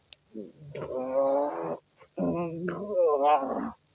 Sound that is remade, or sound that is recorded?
recorded